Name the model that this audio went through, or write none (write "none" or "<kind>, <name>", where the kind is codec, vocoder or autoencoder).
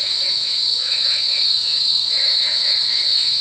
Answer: autoencoder, DAC-VAE